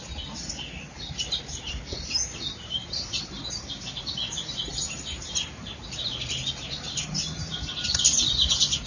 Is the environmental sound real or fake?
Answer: real